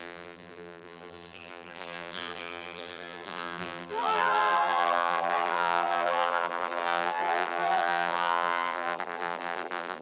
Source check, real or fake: fake